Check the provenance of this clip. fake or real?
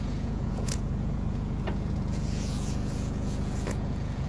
fake